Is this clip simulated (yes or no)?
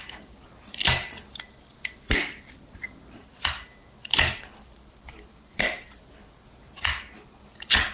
no